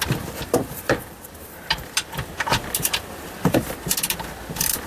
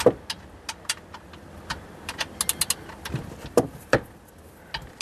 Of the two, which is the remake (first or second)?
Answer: first